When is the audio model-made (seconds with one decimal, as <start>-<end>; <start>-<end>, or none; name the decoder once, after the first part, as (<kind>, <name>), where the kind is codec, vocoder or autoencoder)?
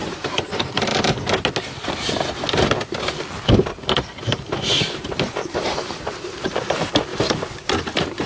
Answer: 0.0-0.9 (vocoder, BigVGAN v2); 4.8-8.3